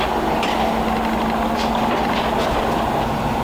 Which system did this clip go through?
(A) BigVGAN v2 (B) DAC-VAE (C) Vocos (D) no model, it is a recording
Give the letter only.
D